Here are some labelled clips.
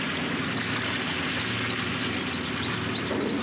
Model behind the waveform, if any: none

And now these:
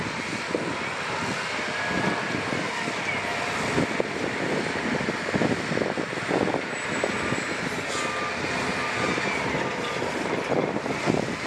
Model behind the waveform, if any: none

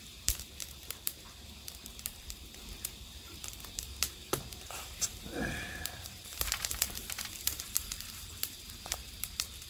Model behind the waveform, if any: vocoder, BigVGAN v2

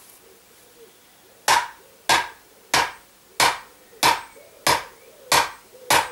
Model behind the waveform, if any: none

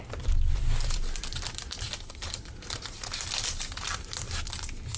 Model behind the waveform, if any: vocoder, BigVGAN v2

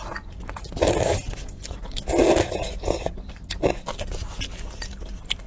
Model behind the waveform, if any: none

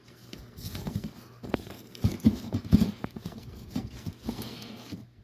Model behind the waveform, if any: codec, SNAC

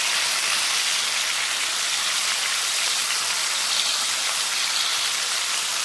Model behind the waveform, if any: none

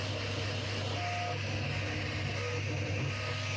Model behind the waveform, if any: none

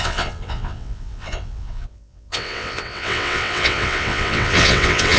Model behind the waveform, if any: vocoder, WaveNeXt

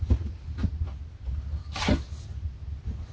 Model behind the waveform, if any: none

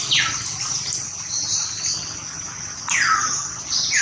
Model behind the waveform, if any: none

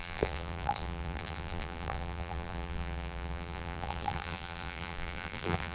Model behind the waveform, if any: vocoder, BigVGAN v2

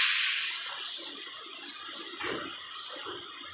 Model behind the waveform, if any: none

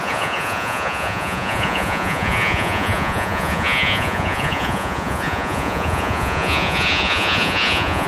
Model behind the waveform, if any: vocoder, Vocos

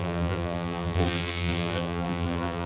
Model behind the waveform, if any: vocoder, BigVGAN v2